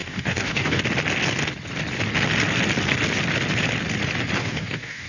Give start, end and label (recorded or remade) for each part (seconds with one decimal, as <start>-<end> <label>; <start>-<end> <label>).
0.0-0.8 remade; 0.8-4.4 recorded; 4.4-5.1 remade